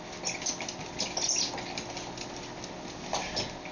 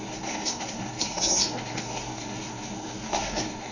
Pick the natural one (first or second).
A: first